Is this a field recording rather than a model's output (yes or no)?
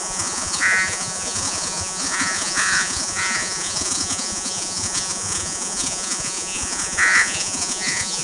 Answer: no